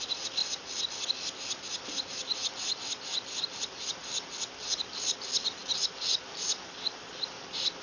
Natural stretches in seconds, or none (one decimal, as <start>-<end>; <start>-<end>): 0.0-7.8

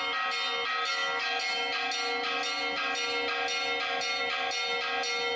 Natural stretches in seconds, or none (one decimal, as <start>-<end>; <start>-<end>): 0.0-5.4

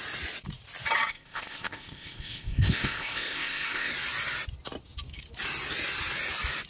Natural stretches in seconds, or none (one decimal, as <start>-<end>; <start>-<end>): 0.0-1.1; 3.9-6.7

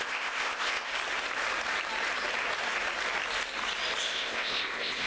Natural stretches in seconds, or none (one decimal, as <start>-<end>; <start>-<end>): 0.9-4.0

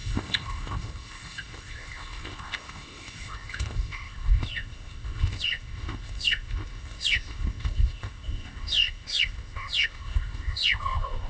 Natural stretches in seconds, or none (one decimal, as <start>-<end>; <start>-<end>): none

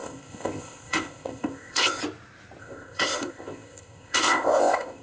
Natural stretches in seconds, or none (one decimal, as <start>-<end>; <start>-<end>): 2.0-2.6

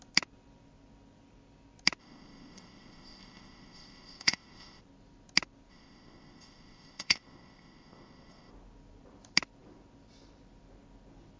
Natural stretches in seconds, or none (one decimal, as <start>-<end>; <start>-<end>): 0.0-2.0; 4.8-5.7; 8.5-11.4